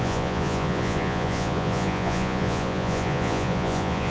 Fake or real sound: fake